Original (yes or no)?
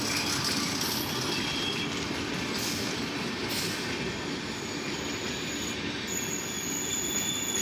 yes